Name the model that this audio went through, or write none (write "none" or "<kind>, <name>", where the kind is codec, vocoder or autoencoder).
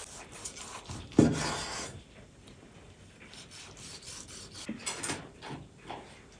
none